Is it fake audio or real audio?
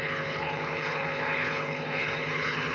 fake